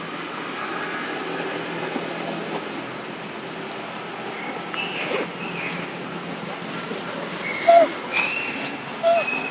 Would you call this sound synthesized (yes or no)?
no